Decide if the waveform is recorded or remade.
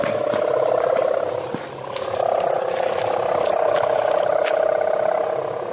remade